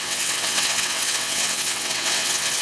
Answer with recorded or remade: remade